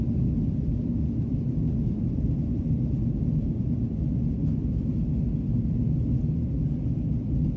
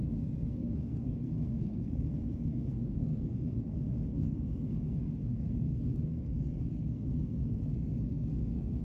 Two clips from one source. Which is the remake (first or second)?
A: second